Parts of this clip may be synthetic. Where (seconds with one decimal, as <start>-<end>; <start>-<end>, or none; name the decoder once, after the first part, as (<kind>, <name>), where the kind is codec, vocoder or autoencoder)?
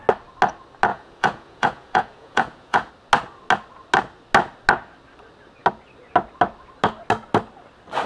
0.9-2.9 (vocoder, Vocos)